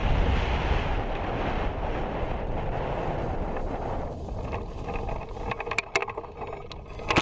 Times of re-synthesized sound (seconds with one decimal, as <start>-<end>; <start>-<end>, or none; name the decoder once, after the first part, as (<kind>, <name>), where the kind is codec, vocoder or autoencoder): none